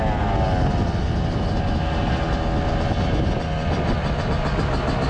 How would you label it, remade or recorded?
recorded